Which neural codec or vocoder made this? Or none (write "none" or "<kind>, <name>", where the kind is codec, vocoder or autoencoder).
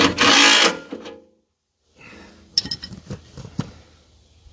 none